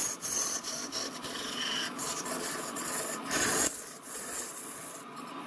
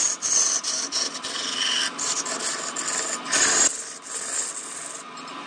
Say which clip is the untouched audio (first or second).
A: second